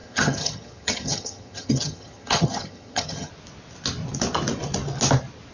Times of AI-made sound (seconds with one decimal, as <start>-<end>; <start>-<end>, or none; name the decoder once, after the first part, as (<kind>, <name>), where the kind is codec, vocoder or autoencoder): 0.0-3.3 (vocoder, HiFi-GAN)